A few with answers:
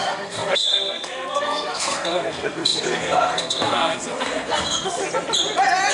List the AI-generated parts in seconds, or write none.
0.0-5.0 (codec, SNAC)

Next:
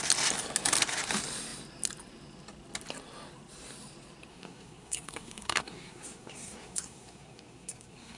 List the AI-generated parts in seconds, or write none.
4.3-8.2 (codec, SNAC)

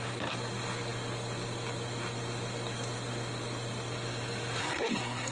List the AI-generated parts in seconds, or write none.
4.6-5.3 (codec, SNAC)

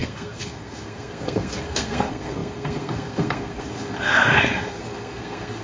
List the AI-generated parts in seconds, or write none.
0.0-5.6 (codec, SNAC)

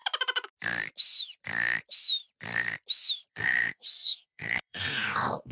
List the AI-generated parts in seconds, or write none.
3.3-5.5 (codec, SNAC)

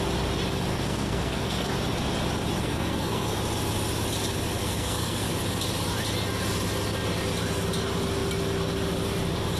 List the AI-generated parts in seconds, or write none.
0.7-1.7 (codec, SNAC); 2.6-3.4; 4.6-5.3

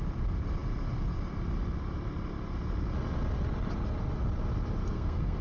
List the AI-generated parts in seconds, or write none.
4.8-5.4 (codec, SNAC)

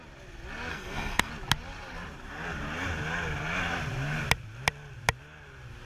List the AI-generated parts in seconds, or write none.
0.7-1.3 (codec, SNAC)